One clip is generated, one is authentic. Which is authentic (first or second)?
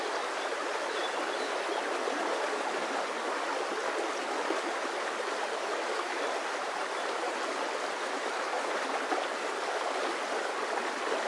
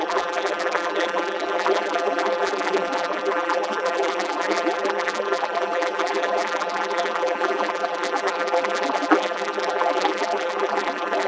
first